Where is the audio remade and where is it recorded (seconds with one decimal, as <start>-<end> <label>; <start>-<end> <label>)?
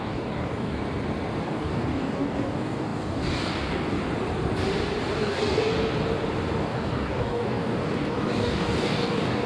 0.0-0.8 remade; 0.8-1.4 recorded; 1.4-4.0 remade; 4.0-5.1 recorded; 5.1-5.7 remade; 5.7-6.6 recorded; 6.6-9.5 remade